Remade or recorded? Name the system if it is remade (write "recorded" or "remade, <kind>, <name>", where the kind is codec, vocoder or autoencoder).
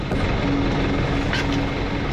recorded